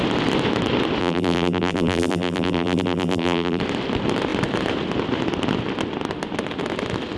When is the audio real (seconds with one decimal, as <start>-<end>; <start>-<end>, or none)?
0.0-1.0; 3.6-7.2